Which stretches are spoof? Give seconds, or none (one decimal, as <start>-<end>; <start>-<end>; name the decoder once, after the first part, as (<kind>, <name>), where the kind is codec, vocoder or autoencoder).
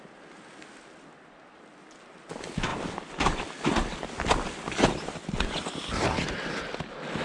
none